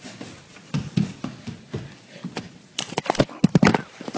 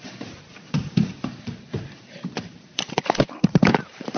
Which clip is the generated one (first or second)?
second